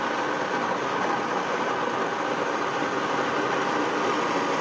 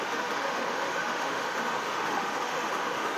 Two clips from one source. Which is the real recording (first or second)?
first